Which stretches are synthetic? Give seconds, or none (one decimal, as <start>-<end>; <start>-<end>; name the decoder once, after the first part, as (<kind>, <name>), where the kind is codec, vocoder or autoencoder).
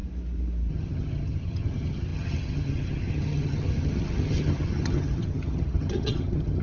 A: 0.7-6.6 (vocoder, HiFi-GAN)